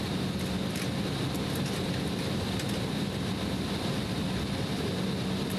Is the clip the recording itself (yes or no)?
yes